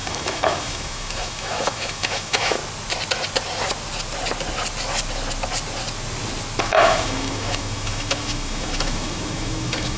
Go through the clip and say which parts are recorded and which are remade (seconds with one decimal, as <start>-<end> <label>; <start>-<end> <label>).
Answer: 0.0-2.6 remade; 2.6-6.6 recorded; 6.6-10.0 remade